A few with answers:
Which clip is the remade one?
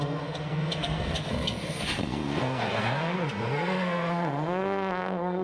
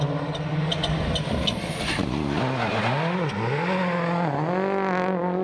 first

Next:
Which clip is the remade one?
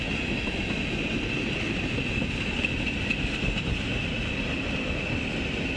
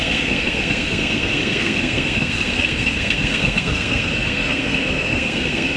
second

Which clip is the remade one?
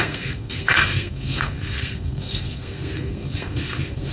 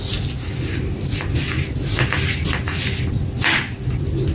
first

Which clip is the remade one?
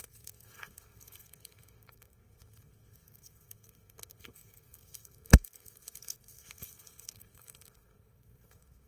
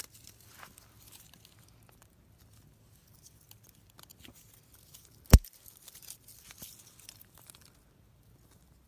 first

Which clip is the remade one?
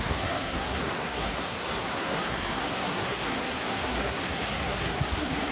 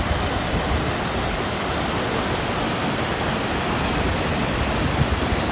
first